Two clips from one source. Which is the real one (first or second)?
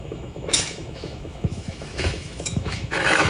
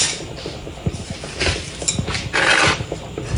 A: second